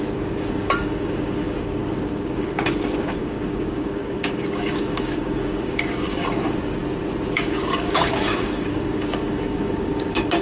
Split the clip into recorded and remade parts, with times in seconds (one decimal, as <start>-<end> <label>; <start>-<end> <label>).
0.0-6.8 remade; 6.8-7.3 recorded; 7.3-10.4 remade